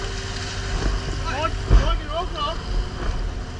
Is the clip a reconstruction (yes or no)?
no